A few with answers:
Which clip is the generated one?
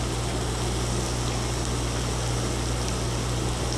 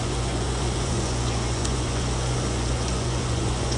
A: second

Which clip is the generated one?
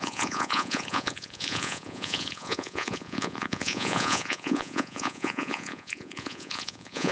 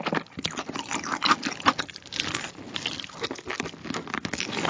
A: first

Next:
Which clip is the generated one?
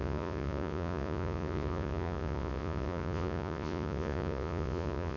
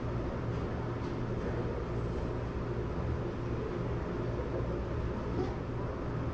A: first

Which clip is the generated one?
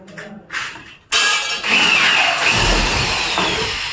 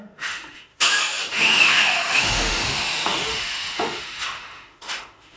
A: second